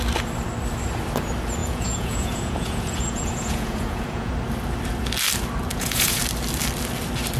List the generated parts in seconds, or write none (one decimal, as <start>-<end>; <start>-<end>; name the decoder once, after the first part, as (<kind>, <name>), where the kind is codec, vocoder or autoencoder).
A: 1.6-4.3 (vocoder, Vocos); 5.7-6.2